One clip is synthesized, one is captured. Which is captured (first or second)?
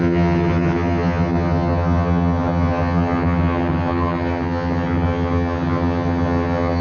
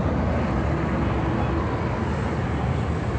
second